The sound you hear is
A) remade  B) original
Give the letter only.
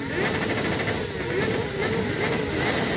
B